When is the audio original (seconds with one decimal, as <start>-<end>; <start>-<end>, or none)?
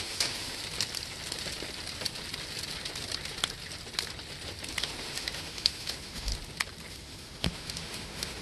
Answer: 0.6-4.8; 6.3-6.9